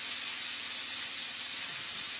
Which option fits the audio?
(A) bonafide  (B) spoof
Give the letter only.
A